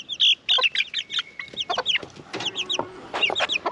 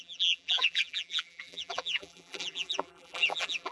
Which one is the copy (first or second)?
second